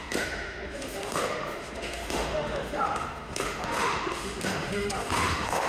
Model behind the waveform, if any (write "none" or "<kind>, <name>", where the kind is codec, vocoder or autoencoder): autoencoder, DAC-VAE